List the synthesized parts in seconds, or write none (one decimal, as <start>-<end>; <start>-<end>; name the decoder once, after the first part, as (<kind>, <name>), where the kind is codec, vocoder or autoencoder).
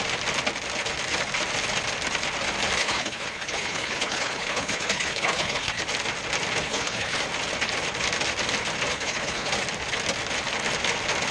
2.8-5.8 (codec, HILCodec); 6.6-7.2; 8.9-9.5